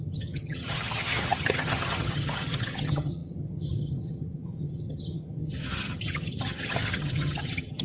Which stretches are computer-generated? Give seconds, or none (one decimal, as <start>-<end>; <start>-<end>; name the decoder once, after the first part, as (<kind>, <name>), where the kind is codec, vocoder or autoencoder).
0.0-7.8 (vocoder, HiFi-GAN)